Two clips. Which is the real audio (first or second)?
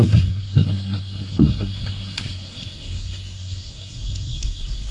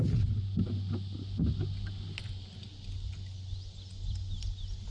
second